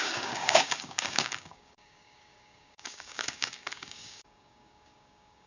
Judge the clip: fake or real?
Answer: fake